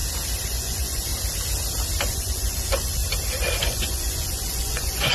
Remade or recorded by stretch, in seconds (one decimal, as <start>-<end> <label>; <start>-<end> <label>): 0.0-0.5 recorded; 0.5-1.1 remade; 1.1-2.1 recorded; 2.1-3.0 remade; 3.0-3.6 recorded; 3.6-5.1 remade